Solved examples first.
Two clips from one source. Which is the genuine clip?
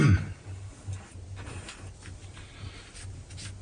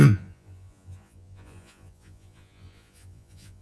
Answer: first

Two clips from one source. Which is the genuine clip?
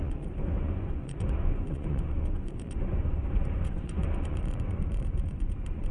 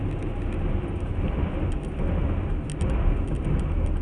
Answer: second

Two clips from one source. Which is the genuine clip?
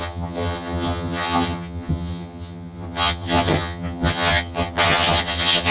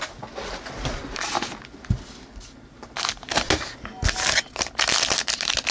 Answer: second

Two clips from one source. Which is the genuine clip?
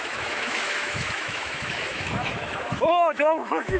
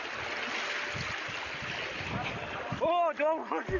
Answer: second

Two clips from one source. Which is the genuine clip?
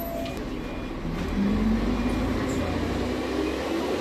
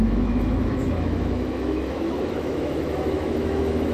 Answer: first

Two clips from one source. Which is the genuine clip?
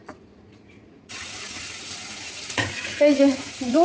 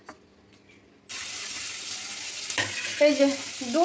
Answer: second